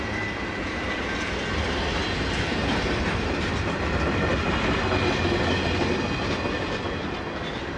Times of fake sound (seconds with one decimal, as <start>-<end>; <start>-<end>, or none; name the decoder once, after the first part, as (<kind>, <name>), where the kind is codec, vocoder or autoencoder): none